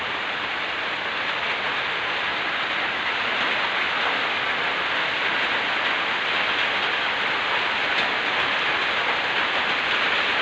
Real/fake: real